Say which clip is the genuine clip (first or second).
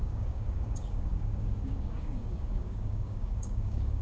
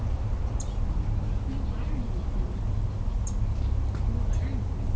second